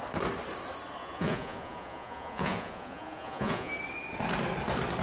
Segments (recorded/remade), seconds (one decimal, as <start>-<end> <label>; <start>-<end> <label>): 0.0-1.0 recorded; 1.0-3.7 remade; 3.7-5.0 recorded